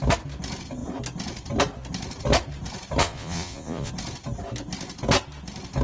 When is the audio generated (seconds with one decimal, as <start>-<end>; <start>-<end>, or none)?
3.0-3.9